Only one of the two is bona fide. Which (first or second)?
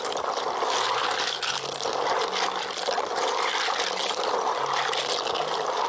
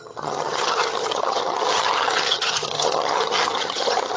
first